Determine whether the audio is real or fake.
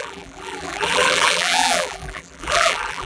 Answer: fake